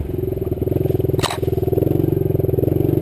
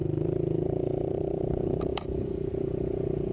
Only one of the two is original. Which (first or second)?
first